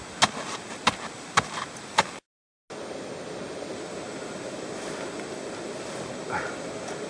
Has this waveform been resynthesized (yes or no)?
no